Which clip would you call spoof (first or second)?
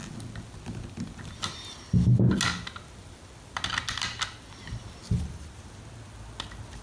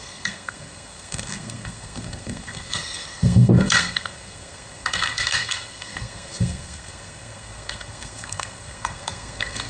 second